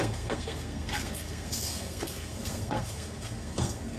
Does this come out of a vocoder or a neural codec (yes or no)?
yes